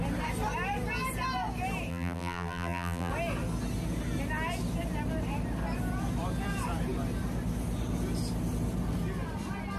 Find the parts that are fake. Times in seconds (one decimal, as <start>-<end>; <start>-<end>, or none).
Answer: 1.9-3.1